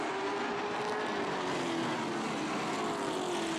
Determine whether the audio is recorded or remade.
recorded